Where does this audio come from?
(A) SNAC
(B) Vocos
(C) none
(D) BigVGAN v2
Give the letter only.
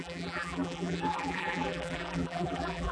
D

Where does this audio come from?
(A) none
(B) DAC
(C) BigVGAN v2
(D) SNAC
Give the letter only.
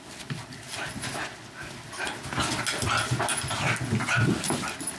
A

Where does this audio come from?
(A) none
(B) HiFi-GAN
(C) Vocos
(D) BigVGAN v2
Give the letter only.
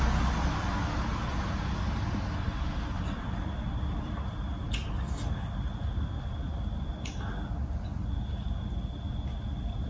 A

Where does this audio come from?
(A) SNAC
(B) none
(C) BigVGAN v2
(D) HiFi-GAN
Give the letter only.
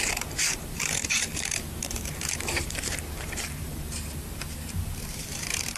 C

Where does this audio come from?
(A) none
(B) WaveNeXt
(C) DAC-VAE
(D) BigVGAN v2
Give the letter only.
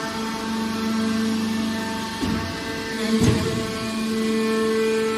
A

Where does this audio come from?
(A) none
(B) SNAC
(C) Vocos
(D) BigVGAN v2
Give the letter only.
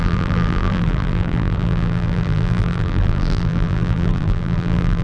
D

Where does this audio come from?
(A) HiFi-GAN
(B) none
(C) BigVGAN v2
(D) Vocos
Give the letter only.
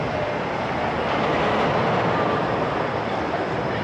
B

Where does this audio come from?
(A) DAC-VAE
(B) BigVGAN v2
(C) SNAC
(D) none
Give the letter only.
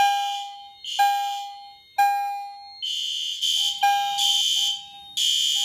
D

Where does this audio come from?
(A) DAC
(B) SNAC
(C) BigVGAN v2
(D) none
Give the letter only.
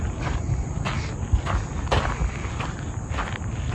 D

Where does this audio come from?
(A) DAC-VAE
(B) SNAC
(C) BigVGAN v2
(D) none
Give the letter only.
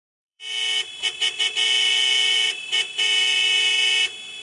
C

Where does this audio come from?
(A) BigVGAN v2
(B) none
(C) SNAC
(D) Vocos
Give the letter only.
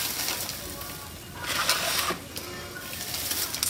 B